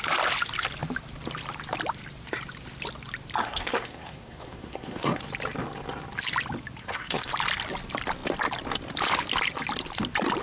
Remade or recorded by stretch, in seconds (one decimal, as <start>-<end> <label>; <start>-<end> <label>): 0.0-3.4 recorded; 3.4-5.2 remade; 5.2-6.8 recorded; 6.8-7.3 remade; 7.3-10.4 recorded